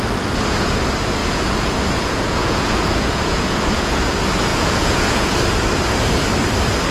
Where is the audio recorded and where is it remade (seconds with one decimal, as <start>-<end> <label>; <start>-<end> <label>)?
0.0-1.2 recorded; 1.2-4.1 remade; 4.1-4.5 recorded; 4.5-5.3 remade; 5.3-6.9 recorded